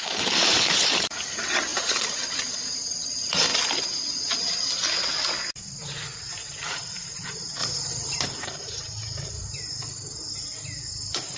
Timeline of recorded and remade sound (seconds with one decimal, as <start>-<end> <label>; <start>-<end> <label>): 0.0-3.5 remade; 3.5-6.3 recorded; 6.3-11.4 remade